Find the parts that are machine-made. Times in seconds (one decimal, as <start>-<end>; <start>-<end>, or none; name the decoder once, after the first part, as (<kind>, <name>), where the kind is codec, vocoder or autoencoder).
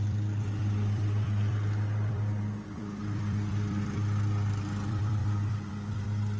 0.0-6.4 (vocoder, BigVGAN v2)